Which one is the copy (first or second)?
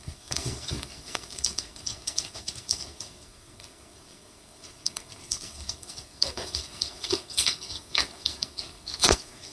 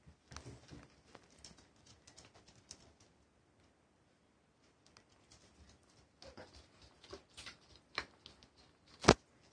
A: first